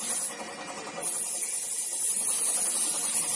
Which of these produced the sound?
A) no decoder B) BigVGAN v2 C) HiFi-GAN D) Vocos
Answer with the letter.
B